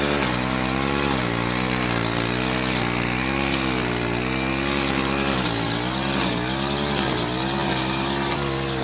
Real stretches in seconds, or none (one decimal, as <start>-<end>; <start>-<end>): 0.0-8.8